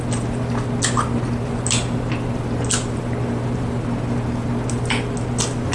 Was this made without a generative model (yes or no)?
yes